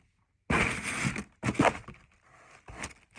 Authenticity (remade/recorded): recorded